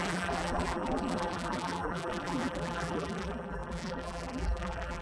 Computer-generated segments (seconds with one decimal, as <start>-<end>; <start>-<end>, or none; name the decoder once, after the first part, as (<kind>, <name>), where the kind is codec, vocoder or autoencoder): 0.0-5.0 (vocoder, BigVGAN v2)